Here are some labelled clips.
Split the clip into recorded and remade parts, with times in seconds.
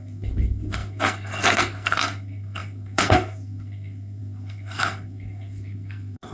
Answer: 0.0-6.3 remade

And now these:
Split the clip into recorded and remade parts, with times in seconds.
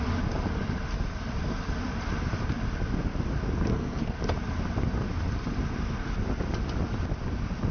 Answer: 0.0-3.7 recorded; 3.7-4.2 remade; 4.2-7.7 recorded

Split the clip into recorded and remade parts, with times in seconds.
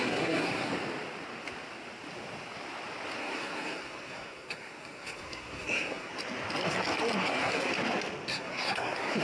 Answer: 0.0-0.7 remade; 0.7-3.2 recorded; 3.2-6.1 remade; 6.1-7.2 recorded; 7.2-7.7 remade; 7.7-8.3 recorded; 8.3-9.2 remade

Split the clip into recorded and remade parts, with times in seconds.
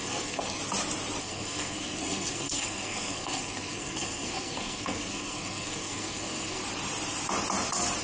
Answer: 0.0-0.6 remade; 0.6-1.2 recorded; 1.2-6.6 remade; 6.6-8.0 recorded